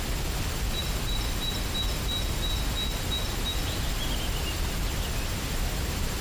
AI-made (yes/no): no